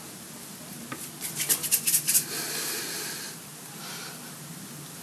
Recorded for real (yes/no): yes